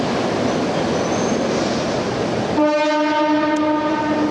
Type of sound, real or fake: real